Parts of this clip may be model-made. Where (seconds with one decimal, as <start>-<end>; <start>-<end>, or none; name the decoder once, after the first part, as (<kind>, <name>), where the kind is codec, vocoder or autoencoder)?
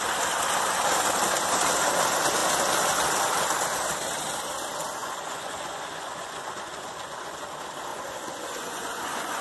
5.0-7.4 (vocoder, Vocos); 7.9-9.4